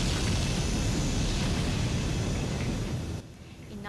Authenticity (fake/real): real